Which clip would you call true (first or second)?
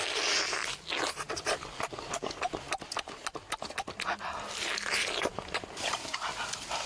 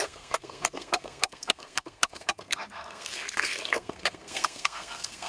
first